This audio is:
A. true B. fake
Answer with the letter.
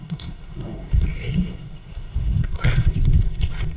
B